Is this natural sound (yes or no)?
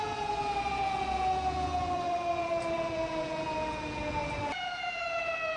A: no